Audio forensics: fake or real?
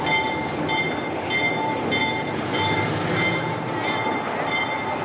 real